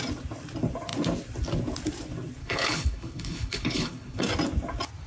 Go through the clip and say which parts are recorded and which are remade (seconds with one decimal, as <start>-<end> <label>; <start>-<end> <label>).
0.0-2.4 recorded; 2.4-4.2 remade; 4.2-5.1 recorded